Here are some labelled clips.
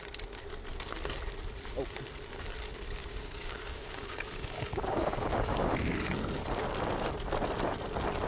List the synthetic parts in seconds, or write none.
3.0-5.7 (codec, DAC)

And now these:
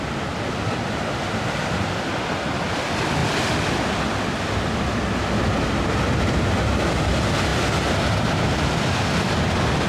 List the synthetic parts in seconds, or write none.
none

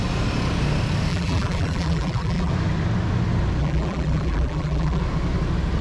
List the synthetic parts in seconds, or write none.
1.1-2.5 (vocoder, BigVGAN v2); 3.6-5.0